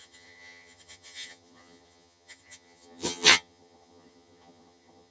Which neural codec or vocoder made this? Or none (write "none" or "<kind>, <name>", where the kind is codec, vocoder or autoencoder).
vocoder, HiFi-GAN